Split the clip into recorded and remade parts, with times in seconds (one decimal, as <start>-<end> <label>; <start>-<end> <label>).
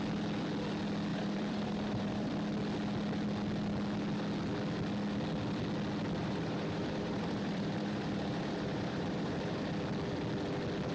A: 0.0-1.1 recorded; 1.1-2.3 remade; 2.3-6.2 recorded; 6.2-9.7 remade; 9.7-10.9 recorded